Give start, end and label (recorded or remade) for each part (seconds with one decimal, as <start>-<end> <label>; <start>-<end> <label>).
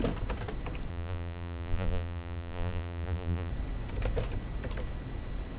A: 0.0-0.9 recorded; 0.9-3.5 remade; 3.5-5.6 recorded